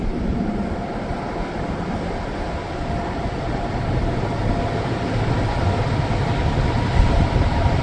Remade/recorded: recorded